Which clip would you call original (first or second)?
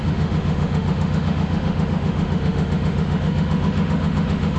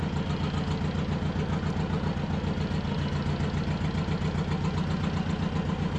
second